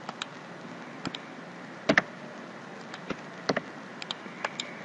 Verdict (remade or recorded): recorded